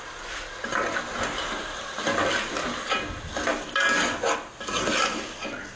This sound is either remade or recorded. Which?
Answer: recorded